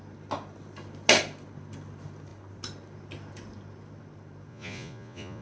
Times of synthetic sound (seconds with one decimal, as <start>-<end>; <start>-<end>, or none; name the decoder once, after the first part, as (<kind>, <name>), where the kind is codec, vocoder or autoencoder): 4.5-5.4 (vocoder, Vocos)